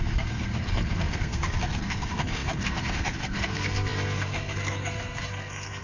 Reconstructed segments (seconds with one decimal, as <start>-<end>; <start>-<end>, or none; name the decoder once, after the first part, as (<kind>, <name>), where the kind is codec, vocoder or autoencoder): 0.0-5.8 (codec, SNAC)